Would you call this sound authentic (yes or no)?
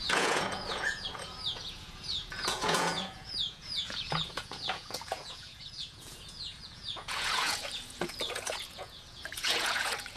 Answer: no